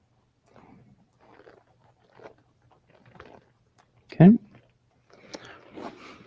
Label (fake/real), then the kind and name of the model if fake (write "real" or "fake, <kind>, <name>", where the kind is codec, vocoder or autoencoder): real